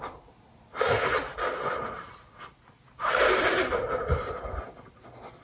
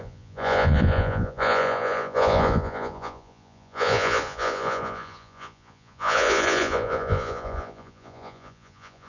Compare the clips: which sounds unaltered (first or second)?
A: first